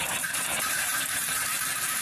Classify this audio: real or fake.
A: fake